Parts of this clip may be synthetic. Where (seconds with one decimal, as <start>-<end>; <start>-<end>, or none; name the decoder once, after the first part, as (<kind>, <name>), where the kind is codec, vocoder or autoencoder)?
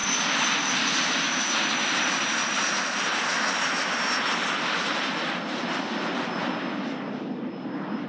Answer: 0.0-2.2 (vocoder, BigVGAN v2)